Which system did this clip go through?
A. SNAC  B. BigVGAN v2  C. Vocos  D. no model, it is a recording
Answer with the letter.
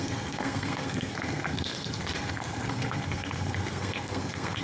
A